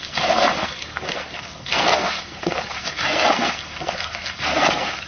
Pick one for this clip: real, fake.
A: fake